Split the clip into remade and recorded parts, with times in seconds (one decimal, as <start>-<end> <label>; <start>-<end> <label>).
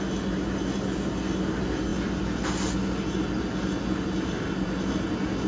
0.0-5.5 recorded